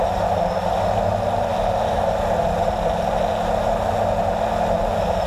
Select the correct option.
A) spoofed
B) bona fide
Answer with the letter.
B